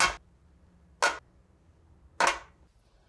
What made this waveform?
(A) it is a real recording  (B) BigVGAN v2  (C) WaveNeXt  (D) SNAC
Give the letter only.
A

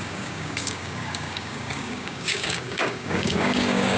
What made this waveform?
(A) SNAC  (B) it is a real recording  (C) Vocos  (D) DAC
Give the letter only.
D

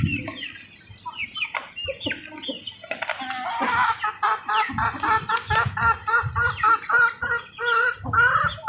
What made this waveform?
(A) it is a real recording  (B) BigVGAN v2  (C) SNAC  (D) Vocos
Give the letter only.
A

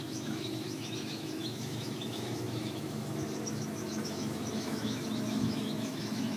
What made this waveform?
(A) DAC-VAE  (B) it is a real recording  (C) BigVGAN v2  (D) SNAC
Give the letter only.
A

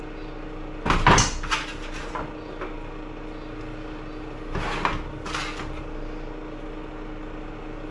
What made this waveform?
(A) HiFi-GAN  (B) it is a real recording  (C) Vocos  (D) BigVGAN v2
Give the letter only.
B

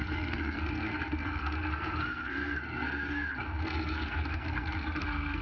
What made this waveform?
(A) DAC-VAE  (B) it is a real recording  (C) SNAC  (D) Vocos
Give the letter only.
C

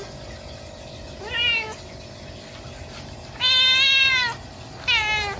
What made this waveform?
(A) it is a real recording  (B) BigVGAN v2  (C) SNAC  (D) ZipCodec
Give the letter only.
A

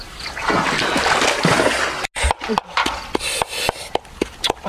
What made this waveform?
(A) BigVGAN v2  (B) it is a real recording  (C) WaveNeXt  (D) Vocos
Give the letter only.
B